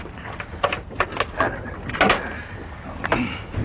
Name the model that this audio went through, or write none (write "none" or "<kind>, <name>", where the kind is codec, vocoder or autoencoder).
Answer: none